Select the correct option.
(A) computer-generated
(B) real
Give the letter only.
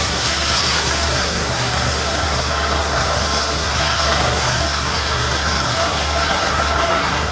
A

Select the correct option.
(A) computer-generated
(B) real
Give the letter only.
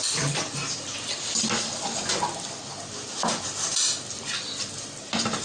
B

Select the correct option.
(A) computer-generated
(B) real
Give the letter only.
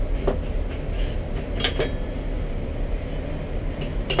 B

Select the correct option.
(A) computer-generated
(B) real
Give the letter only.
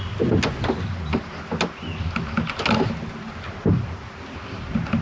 B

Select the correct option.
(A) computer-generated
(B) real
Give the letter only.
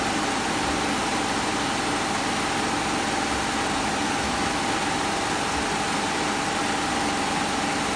B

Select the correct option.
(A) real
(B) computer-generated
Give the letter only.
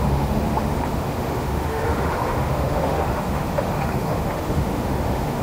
B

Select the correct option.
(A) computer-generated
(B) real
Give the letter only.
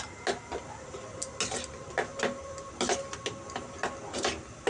B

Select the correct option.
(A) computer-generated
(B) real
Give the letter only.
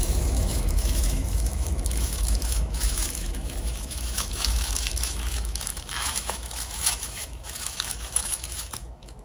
A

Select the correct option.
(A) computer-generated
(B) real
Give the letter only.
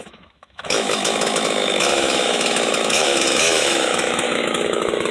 A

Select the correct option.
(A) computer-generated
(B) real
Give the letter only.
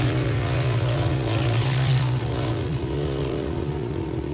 A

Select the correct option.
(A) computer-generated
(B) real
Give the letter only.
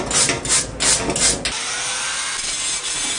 B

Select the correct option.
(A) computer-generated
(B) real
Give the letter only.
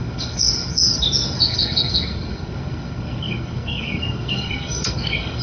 A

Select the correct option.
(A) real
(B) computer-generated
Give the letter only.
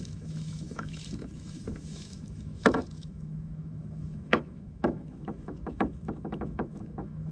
B